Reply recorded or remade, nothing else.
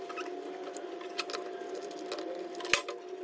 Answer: recorded